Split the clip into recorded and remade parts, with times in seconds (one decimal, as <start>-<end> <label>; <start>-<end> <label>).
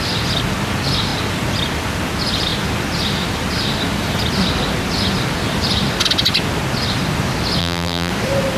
0.0-7.6 recorded; 7.6-8.1 remade; 8.1-8.6 recorded